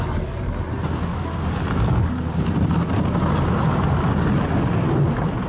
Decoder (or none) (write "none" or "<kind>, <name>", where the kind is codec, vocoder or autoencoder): none